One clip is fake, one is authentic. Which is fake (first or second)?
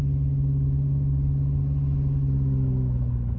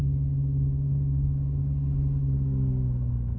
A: second